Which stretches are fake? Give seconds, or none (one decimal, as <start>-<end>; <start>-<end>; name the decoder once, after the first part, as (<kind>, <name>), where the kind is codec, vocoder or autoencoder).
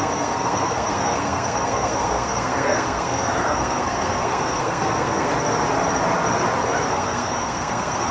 0.0-5.3 (codec, SNAC); 6.9-8.1